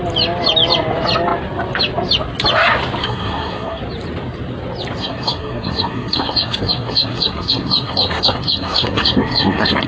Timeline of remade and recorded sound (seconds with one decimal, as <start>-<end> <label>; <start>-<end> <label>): 0.0-3.0 recorded; 3.0-3.8 remade; 3.8-5.0 recorded; 5.0-9.9 remade